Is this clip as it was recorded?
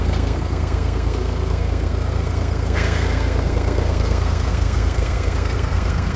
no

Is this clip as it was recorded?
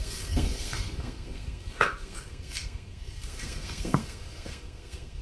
no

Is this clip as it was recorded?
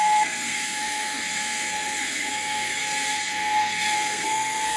no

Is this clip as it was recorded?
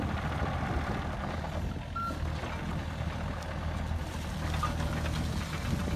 yes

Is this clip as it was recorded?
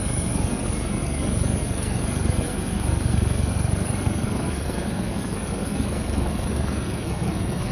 no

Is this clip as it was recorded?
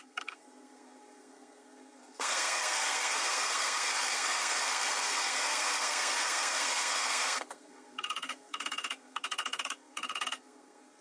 no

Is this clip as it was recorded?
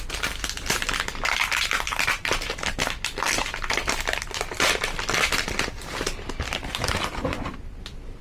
yes